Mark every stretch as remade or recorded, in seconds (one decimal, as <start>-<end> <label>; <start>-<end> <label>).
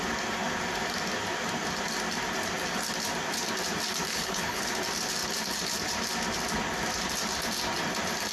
0.0-4.1 recorded; 4.1-4.6 remade; 4.6-8.3 recorded